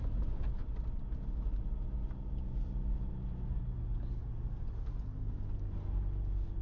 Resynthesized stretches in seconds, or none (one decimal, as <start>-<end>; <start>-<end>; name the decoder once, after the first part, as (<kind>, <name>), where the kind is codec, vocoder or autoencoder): none